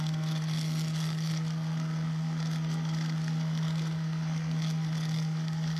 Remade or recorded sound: remade